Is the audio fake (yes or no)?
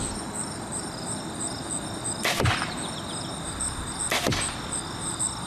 no